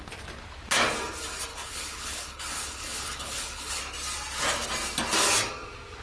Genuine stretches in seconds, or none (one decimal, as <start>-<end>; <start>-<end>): 0.0-1.5; 3.8-6.0